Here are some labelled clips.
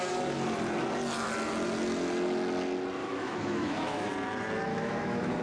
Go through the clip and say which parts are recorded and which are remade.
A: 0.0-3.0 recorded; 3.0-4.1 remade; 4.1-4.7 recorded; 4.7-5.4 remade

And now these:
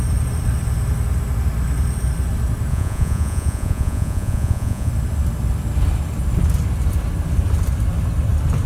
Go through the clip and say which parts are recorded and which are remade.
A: 0.0-2.7 recorded; 2.7-4.9 remade; 4.9-8.7 recorded

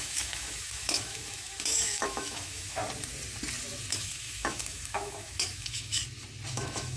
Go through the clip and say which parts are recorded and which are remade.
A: 0.0-2.8 remade; 2.8-3.9 recorded; 3.9-6.0 remade; 6.0-6.5 recorded; 6.5-7.0 remade

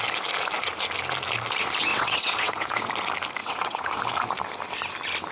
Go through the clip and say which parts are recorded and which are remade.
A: 0.0-1.9 recorded; 1.9-2.9 remade; 2.9-3.4 recorded; 3.4-4.0 remade; 4.0-5.3 recorded

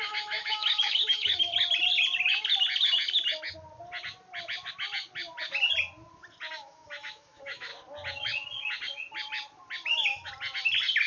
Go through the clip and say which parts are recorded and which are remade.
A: 0.0-1.5 remade; 1.5-6.5 recorded; 6.5-7.7 remade; 7.7-9.9 recorded; 9.9-10.3 remade; 10.3-11.1 recorded

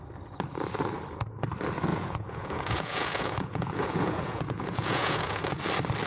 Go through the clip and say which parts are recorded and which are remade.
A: 0.0-1.9 recorded; 1.9-5.6 remade; 5.6-6.1 recorded

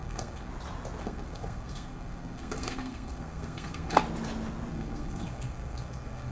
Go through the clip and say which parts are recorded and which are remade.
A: 0.0-0.5 remade; 0.5-1.0 recorded; 1.0-4.0 remade; 4.0-4.7 recorded; 4.7-6.3 remade

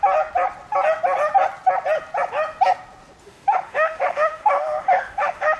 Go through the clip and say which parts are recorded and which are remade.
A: 0.0-3.2 recorded; 3.2-5.6 remade